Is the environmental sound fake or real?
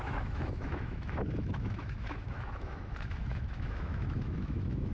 fake